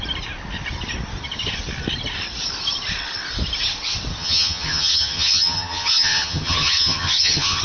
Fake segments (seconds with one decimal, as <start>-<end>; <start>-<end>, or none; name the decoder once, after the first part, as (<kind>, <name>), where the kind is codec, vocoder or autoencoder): 4.2-7.6 (vocoder, HiFi-GAN)